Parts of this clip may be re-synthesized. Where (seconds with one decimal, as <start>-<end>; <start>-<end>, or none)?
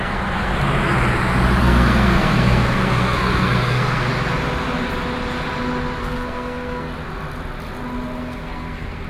0.0-0.5; 1.6-4.1; 6.0-6.9; 8.2-9.1